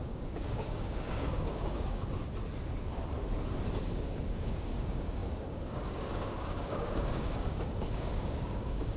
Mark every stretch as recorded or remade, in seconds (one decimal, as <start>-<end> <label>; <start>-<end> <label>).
0.0-2.2 remade; 2.2-3.9 recorded; 3.9-9.0 remade